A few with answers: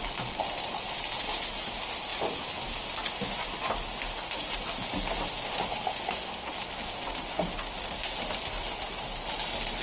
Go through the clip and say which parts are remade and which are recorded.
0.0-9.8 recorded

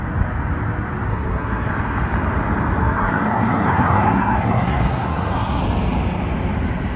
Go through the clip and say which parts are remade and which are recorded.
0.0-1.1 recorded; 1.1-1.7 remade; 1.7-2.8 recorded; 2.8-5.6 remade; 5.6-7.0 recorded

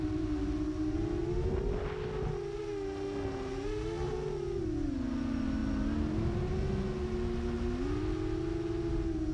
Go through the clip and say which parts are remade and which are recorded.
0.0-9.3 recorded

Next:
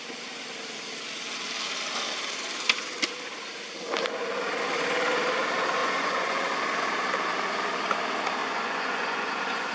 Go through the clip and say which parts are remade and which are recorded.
0.0-5.8 recorded; 5.8-6.5 remade; 6.5-8.4 recorded; 8.4-9.7 remade

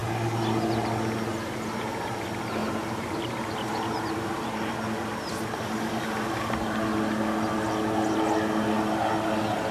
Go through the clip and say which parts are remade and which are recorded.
0.0-2.6 recorded; 2.6-4.7 remade; 4.7-9.7 recorded

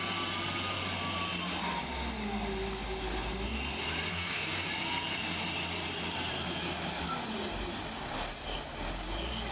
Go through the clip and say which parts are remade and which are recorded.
0.0-4.1 recorded; 4.1-4.7 remade; 4.7-9.5 recorded

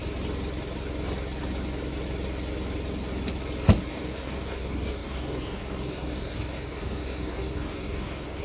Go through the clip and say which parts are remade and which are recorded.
0.0-3.9 recorded; 3.9-8.4 remade